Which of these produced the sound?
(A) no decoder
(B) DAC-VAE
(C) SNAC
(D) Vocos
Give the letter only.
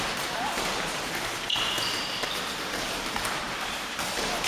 A